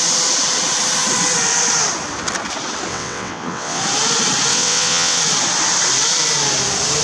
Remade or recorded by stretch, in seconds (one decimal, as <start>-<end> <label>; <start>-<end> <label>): 0.0-2.9 recorded; 2.9-3.8 remade; 3.8-4.5 recorded; 4.5-5.2 remade; 5.2-7.0 recorded